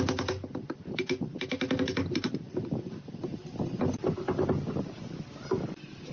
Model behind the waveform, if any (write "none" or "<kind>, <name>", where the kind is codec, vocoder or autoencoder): none